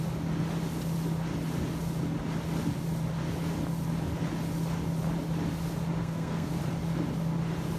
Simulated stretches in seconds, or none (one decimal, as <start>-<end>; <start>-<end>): 6.0-6.6